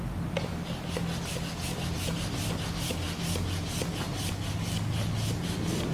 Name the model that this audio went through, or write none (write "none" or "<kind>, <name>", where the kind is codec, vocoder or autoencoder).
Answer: none